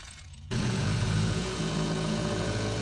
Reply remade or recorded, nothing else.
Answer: remade